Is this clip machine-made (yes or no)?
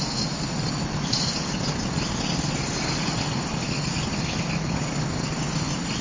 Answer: no